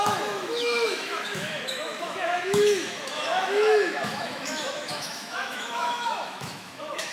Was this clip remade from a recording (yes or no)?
yes